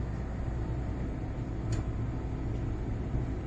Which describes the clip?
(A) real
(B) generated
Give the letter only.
A